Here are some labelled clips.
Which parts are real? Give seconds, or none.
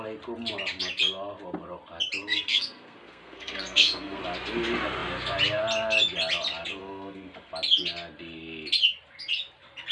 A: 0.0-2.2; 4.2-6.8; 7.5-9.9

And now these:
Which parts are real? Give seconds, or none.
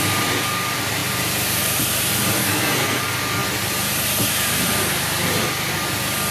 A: 0.0-2.4; 3.0-6.3